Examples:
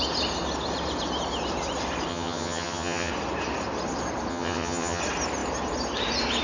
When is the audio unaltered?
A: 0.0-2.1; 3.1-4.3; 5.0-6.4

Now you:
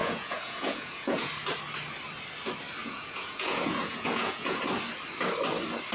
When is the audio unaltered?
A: 1.3-2.8; 4.6-5.9

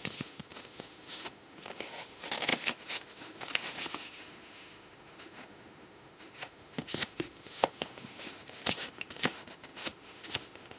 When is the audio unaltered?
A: none

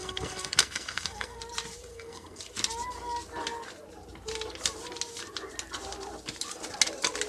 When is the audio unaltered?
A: 1.4-1.9; 2.4-7.3

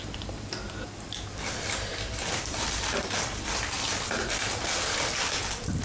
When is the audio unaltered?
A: 0.0-1.9

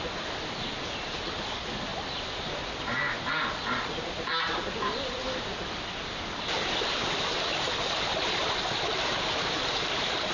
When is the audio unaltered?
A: 0.0-10.3